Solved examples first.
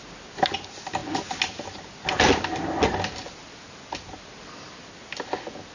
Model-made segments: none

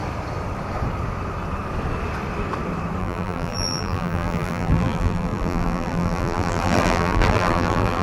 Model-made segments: 3.0-8.0 (vocoder, BigVGAN v2)

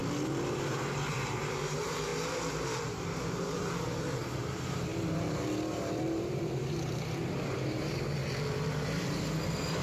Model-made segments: 0.5-2.1 (vocoder, BigVGAN v2); 2.9-4.9; 5.7-8.2; 8.9-9.8

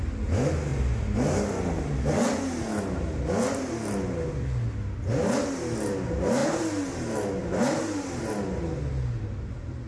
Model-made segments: none

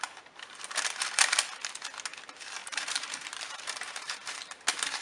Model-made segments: 2.6-4.6 (vocoder, BigVGAN v2)

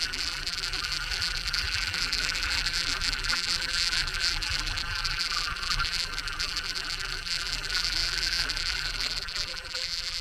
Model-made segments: 0.0-10.2 (vocoder, BigVGAN v2)